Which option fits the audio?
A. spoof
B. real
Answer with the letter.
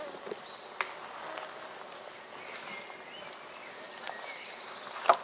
B